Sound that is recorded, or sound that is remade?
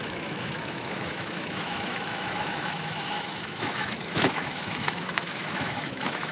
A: remade